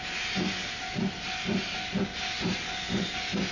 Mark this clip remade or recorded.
recorded